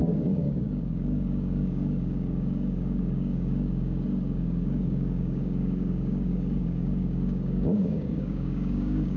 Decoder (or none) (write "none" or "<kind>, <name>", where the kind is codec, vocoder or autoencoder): codec, DAC